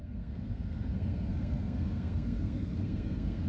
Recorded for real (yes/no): no